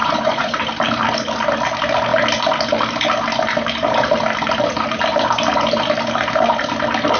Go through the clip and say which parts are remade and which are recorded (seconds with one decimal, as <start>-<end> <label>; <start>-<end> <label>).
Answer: 0.0-0.6 remade; 0.6-7.2 recorded